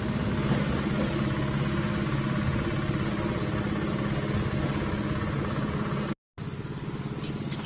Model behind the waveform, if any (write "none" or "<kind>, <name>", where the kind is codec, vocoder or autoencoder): none